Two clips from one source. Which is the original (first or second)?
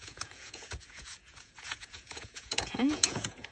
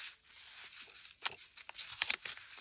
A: second